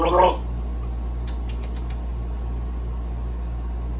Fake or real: real